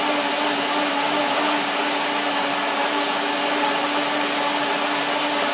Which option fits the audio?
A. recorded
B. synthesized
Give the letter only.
A